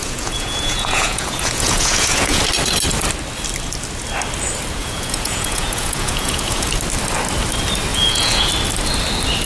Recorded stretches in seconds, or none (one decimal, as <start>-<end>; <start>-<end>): 2.4-4.8; 6.7-7.9; 8.5-9.5

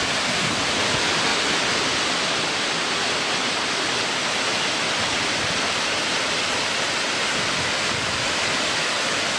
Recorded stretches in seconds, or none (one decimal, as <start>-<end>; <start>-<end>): 0.0-9.4

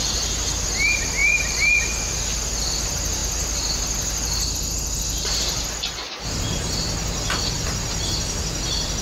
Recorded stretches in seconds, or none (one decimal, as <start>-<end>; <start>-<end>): 0.0-1.2; 1.8-9.0

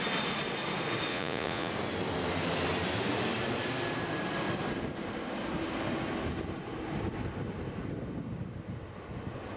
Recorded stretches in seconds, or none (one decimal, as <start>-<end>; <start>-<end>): 0.0-1.1; 1.7-9.6

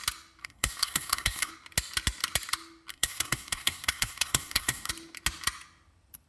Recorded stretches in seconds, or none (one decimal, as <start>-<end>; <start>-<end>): 0.0-0.4; 1.5-2.9; 4.9-6.3